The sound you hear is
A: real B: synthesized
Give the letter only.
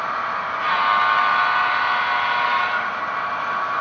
B